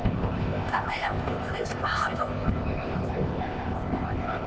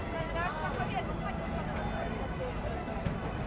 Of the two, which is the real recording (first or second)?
second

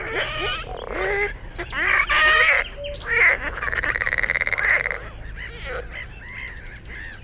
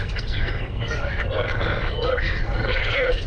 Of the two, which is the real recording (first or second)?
first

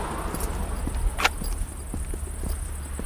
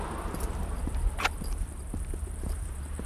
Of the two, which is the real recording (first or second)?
first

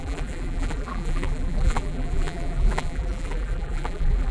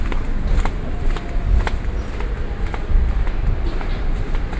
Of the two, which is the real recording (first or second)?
second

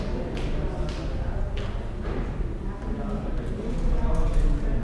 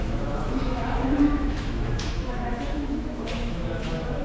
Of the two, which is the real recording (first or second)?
first